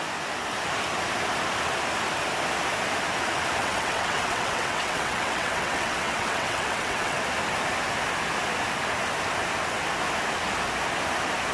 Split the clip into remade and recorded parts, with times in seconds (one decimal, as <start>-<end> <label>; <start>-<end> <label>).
0.0-3.6 recorded; 3.6-7.2 remade; 7.2-11.5 recorded